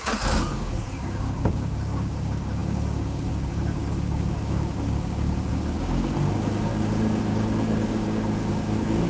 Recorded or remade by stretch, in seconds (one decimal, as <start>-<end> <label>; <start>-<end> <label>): 0.0-9.1 remade